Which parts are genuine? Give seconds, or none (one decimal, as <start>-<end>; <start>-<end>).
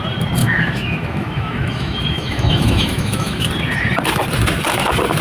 0.0-0.4; 3.5-5.2